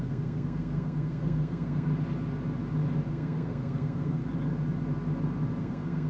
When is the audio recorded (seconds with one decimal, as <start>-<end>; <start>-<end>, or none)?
1.9-3.1; 4.2-5.6